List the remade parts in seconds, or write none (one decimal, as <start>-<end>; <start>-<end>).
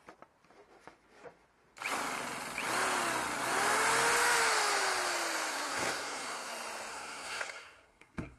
5.5-6.5; 6.9-8.4